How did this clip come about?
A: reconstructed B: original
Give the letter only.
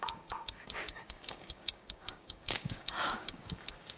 A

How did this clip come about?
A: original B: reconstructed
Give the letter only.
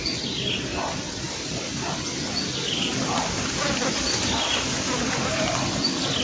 A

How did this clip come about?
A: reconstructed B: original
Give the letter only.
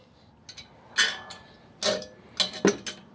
B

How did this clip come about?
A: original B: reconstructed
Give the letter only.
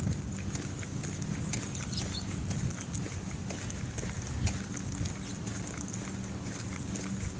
A